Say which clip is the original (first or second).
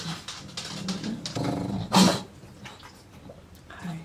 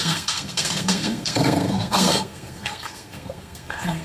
first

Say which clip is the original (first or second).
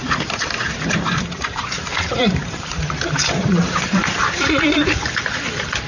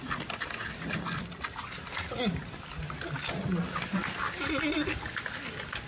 second